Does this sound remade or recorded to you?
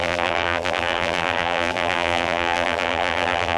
remade